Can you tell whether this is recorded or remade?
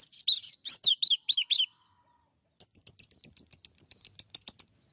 recorded